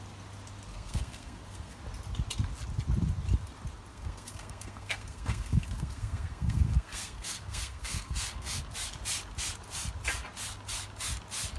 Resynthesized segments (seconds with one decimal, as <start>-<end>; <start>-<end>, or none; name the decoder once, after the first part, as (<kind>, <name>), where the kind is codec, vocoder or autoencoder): 0.7-1.8 (codec, SNAC); 3.9-8.6